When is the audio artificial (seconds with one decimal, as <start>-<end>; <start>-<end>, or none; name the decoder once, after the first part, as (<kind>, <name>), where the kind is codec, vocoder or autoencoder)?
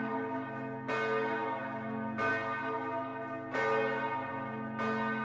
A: none